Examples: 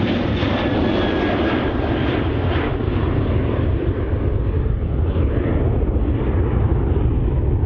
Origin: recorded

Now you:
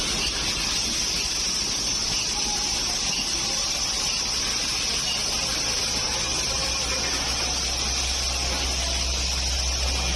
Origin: recorded